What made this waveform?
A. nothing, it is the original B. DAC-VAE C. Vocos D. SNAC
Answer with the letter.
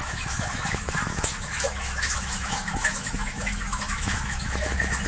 B